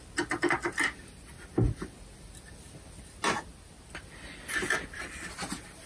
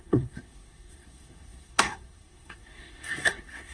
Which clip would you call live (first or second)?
first